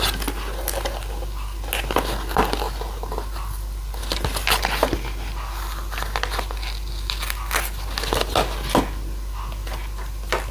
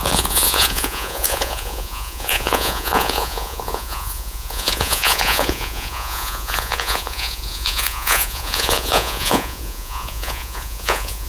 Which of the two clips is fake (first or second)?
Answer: second